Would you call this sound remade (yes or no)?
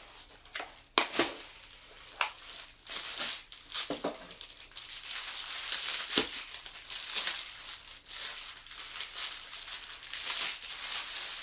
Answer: no